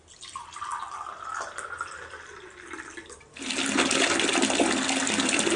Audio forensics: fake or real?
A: real